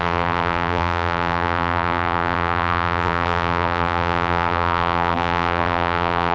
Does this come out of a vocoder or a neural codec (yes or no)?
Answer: yes